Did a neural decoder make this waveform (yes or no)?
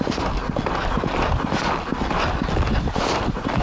no